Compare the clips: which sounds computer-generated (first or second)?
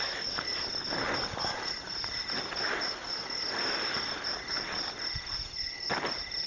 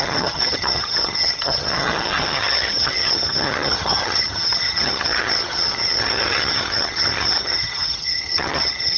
second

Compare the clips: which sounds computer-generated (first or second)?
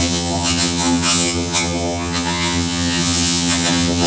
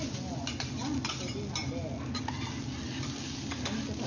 first